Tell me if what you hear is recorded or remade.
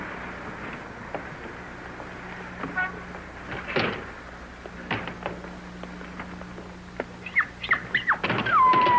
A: recorded